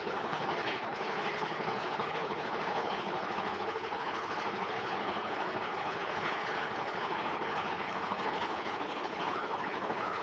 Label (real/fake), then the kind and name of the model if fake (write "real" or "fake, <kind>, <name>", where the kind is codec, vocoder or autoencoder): fake, codec, HILCodec